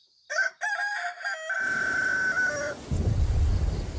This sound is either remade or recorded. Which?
recorded